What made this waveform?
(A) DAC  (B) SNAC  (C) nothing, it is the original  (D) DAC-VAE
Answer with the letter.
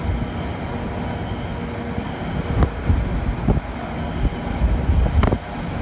C